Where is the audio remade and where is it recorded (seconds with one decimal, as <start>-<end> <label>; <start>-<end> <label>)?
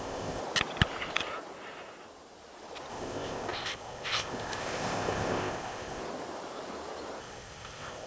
0.0-0.4 remade; 0.4-2.9 recorded; 2.9-6.0 remade; 6.0-7.2 recorded; 7.2-8.1 remade